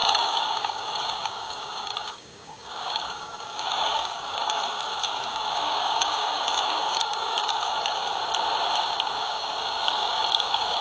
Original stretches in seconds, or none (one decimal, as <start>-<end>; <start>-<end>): 8.2-9.1